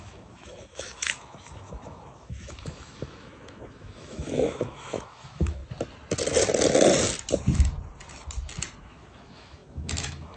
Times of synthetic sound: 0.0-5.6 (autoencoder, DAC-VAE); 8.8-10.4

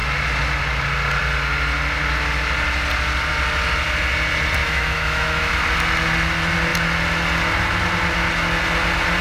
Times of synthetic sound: 4.6-5.6 (autoencoder, DAC-VAE)